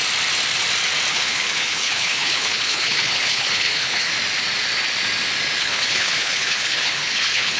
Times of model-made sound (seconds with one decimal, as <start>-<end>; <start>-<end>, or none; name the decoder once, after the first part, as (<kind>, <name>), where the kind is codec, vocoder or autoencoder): 1.1-4.1 (codec, HILCodec); 5.6-7.6